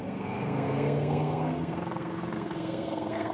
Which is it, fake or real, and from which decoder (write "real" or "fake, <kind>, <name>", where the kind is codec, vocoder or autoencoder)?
fake, codec, SNAC